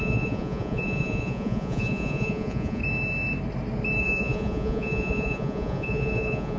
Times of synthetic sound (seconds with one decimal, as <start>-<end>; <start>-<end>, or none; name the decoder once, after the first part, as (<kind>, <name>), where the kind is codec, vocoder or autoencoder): 0.0-2.8 (vocoder, Vocos); 4.0-6.6